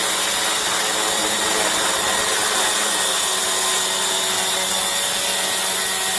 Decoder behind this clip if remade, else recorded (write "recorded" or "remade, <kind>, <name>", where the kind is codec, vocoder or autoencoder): recorded